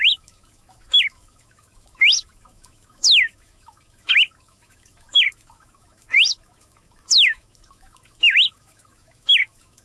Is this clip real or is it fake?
fake